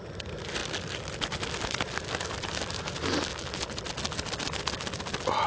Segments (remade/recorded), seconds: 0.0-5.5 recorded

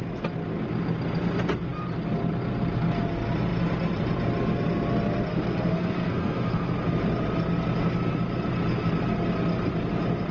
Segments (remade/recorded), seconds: 0.0-5.3 recorded; 5.3-6.7 remade; 6.7-10.3 recorded

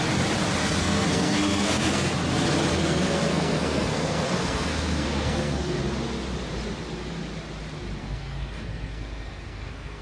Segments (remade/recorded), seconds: 0.0-0.6 recorded; 0.6-2.1 remade; 2.1-2.7 recorded; 2.7-5.8 remade; 5.8-8.0 recorded; 8.0-10.0 remade

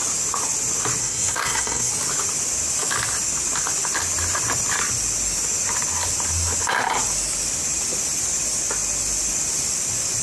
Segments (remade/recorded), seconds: 0.0-1.0 recorded; 1.0-1.9 remade; 1.9-10.2 recorded

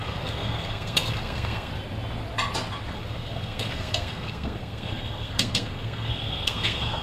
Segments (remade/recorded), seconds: 0.0-1.7 remade; 1.7-2.9 recorded; 2.9-7.0 remade

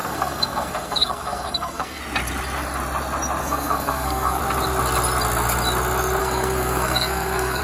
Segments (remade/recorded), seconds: 0.0-2.0 remade; 2.0-3.4 recorded; 3.4-4.4 remade; 4.4-6.2 recorded; 6.2-7.6 remade

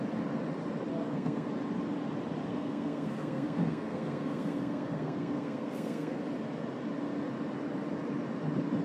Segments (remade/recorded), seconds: 0.0-0.9 recorded; 0.9-1.5 remade; 1.5-2.5 recorded; 2.5-6.2 remade; 6.2-8.8 recorded

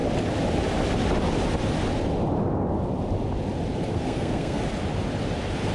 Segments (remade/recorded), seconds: 0.0-3.9 recorded; 3.9-4.6 remade; 4.6-5.7 recorded